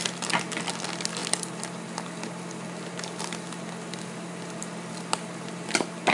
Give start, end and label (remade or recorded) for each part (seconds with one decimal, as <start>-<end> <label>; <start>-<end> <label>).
0.0-6.1 recorded